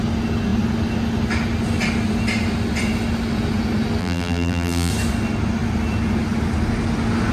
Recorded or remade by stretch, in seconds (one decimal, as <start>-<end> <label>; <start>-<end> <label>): 0.0-4.0 recorded; 4.0-4.9 remade; 4.9-7.3 recorded